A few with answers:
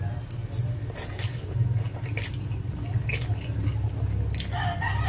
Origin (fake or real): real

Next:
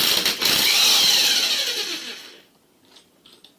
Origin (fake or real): real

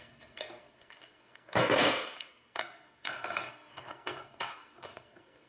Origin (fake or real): fake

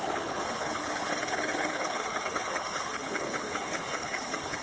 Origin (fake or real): fake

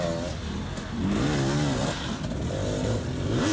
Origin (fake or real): real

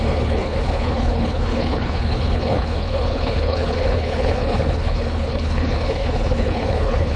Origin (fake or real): fake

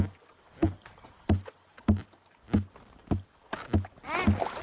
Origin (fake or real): real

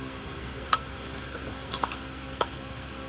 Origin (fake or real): fake